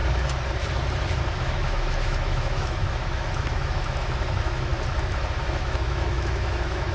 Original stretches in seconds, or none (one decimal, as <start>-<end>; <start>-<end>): 0.0-1.3; 4.7-5.4